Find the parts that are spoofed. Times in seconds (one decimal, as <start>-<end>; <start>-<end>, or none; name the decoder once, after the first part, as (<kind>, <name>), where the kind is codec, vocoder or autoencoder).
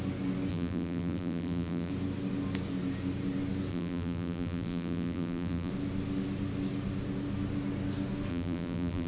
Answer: 0.5-1.9 (vocoder, BigVGAN v2); 3.7-5.7; 8.3-9.1